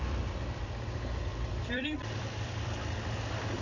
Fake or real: fake